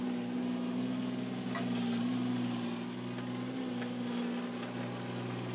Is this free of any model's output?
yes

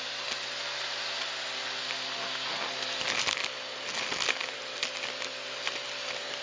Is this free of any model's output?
yes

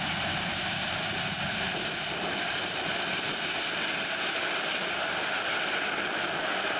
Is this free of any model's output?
yes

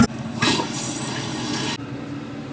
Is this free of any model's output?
yes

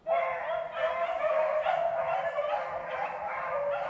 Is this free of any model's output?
yes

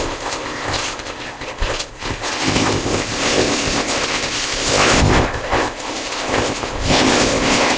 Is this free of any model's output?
no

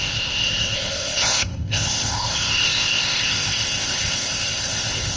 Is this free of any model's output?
no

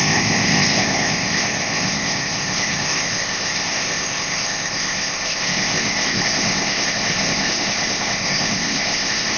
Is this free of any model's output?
no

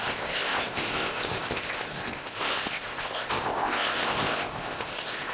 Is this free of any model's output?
no